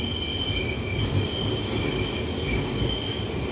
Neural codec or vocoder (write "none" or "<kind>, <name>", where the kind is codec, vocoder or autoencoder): none